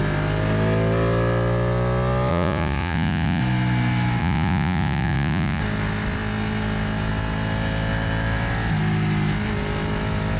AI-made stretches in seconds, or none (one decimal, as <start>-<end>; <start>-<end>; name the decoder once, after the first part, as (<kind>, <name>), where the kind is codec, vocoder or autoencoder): 2.3-3.4 (vocoder, Vocos); 4.2-5.6